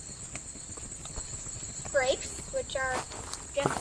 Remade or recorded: recorded